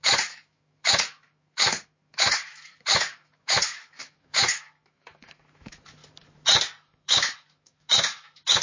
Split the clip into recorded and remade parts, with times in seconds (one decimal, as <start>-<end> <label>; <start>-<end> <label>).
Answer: 0.0-6.0 remade; 6.0-6.8 recorded; 6.8-8.6 remade